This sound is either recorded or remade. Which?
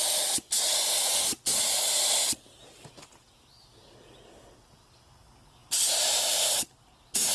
recorded